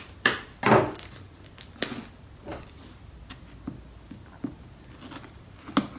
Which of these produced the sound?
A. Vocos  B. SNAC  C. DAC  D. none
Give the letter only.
D